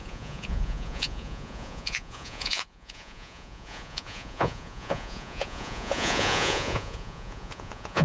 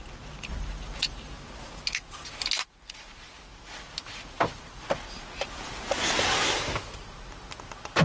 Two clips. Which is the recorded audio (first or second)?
second